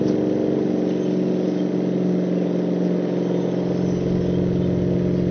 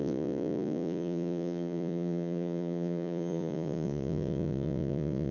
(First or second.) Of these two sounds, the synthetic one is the second